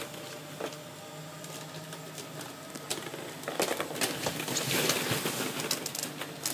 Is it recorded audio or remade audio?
recorded